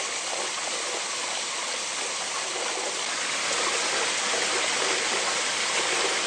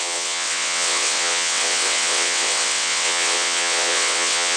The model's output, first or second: second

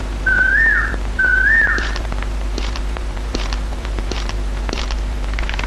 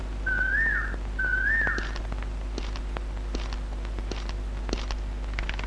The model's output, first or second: first